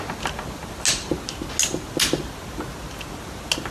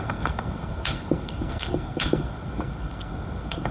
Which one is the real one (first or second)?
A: first